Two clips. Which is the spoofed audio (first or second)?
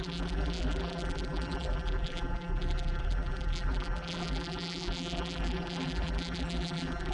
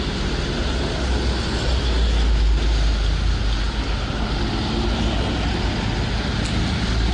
first